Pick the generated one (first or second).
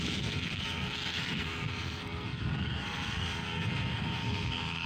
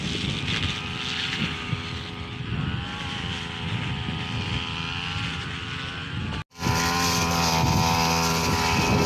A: first